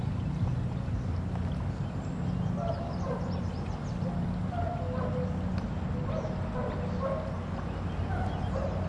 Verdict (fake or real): real